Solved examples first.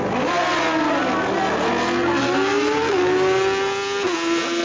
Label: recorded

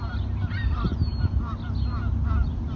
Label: recorded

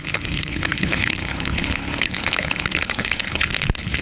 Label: remade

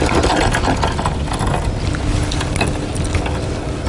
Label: recorded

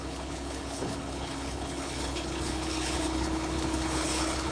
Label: remade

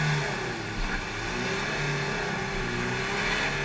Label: recorded